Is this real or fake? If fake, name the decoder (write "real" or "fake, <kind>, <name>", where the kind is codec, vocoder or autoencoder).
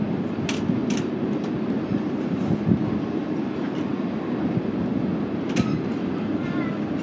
real